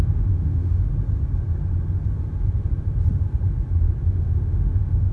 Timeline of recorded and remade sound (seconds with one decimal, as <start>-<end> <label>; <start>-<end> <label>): 0.0-0.9 remade; 0.9-4.0 recorded; 4.0-5.1 remade